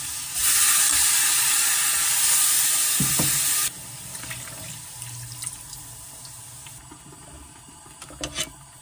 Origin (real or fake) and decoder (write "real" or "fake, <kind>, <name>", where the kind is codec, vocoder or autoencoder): real